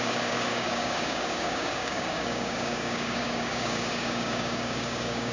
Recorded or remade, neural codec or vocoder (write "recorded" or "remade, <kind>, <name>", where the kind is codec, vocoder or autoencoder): remade, codec, DAC